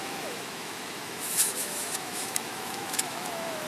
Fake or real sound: fake